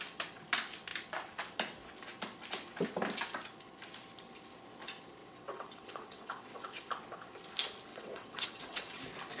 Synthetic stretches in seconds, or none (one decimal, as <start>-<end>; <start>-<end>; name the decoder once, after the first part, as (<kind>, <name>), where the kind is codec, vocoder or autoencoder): 5.2-6.8 (vocoder, WaveNeXt); 7.9-9.0